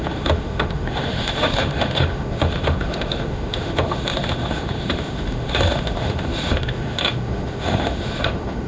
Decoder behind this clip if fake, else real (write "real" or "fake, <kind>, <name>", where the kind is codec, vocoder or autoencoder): fake, autoencoder, DAC-VAE